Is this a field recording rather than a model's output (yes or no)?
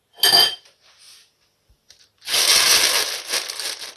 yes